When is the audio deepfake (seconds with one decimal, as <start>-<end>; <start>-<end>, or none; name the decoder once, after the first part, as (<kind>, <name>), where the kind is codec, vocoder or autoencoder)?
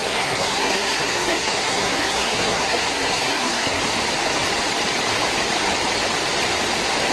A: 0.0-3.8 (codec, SNAC)